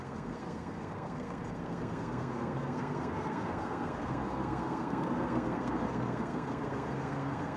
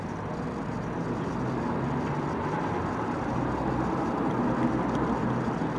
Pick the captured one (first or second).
second